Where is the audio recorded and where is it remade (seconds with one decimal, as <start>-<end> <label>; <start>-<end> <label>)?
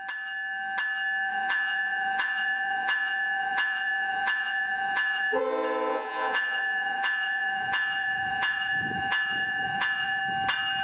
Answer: 0.0-1.3 recorded; 1.3-5.4 remade; 5.4-5.9 recorded; 5.9-10.2 remade; 10.2-10.8 recorded